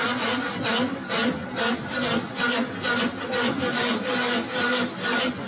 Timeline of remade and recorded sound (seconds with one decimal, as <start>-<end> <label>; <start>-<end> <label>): 0.0-5.5 recorded